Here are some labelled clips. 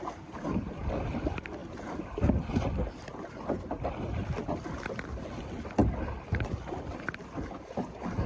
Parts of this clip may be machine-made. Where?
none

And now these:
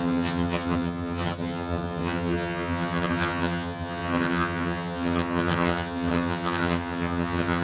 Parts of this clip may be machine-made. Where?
0.0-7.6 (vocoder, HiFi-GAN)